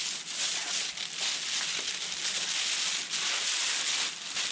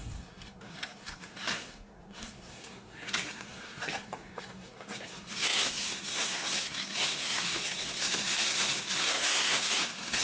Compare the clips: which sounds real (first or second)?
first